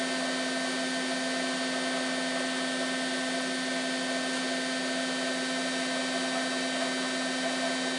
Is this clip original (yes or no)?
yes